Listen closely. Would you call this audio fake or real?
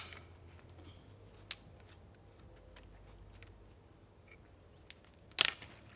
real